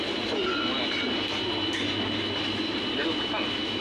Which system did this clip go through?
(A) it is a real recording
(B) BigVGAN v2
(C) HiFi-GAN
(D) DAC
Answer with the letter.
A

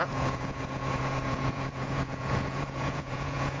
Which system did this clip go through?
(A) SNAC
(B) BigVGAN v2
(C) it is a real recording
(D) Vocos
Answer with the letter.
D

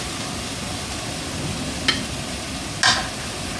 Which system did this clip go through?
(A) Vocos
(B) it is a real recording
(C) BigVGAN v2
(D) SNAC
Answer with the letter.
B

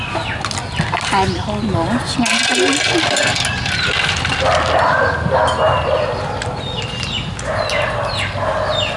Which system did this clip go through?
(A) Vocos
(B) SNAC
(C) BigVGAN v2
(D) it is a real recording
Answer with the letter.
D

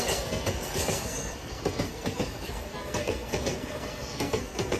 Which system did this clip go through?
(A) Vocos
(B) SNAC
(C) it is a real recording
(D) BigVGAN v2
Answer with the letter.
B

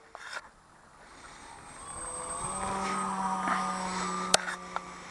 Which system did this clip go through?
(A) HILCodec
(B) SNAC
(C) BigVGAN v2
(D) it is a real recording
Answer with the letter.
C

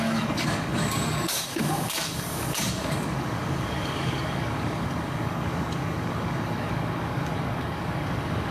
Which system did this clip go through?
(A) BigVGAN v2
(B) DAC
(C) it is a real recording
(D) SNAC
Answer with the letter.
B